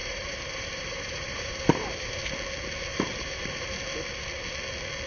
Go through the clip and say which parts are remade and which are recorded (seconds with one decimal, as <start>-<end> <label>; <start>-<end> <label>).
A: 0.0-2.2 remade; 2.2-2.9 recorded; 2.9-3.4 remade; 3.4-5.1 recorded